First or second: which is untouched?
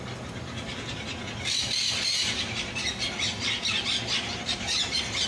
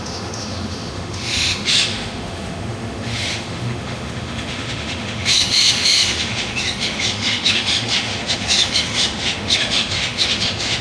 first